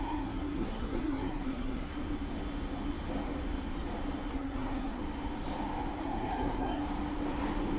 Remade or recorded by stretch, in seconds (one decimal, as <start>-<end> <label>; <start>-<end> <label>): 0.0-1.9 remade; 1.9-4.3 recorded; 4.3-5.0 remade; 5.0-6.0 recorded; 6.0-6.8 remade; 6.8-7.8 recorded